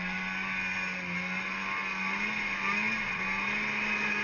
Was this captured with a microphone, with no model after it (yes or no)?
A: yes